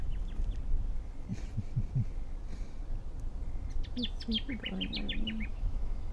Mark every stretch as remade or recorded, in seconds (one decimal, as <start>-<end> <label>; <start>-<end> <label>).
0.0-5.5 recorded; 5.5-6.1 remade

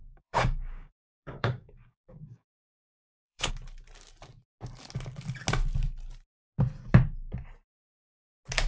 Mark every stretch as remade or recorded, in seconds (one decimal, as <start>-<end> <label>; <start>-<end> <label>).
0.0-3.5 remade; 3.5-8.7 recorded

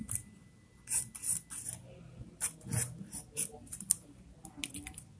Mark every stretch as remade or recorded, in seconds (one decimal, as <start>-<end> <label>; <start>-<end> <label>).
0.0-5.2 recorded

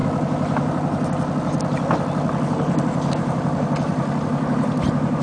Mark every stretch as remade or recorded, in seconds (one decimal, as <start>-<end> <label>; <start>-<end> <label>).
0.0-3.1 recorded; 3.1-5.2 remade

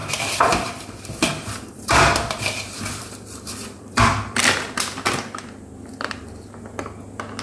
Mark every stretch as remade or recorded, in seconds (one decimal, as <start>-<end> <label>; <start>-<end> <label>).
0.0-4.4 remade; 4.4-7.4 recorded

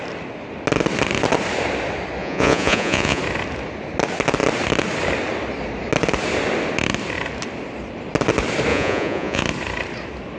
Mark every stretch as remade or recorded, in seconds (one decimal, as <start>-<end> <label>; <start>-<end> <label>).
0.0-2.2 recorded; 2.2-3.2 remade; 3.2-8.7 recorded; 8.7-9.4 remade; 9.4-10.4 recorded